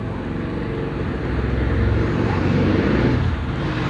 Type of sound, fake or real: real